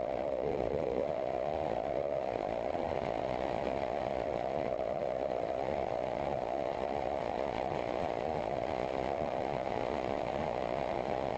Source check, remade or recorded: remade